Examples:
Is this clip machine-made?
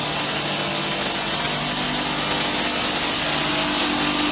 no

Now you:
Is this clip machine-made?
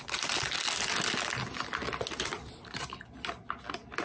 no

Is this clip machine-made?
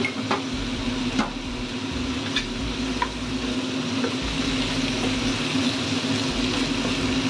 no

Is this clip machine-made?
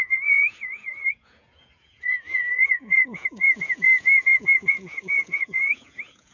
yes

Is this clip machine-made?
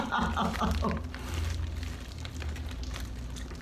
no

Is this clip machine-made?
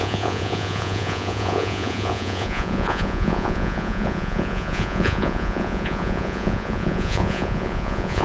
yes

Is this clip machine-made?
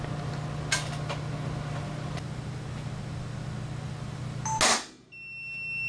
no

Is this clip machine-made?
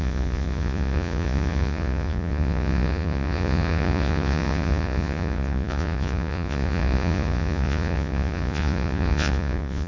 yes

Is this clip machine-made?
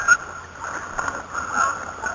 no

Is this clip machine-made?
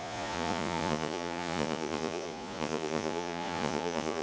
yes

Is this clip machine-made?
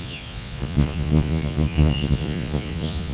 yes